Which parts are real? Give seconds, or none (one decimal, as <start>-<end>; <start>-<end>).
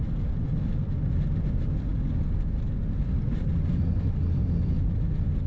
0.0-5.5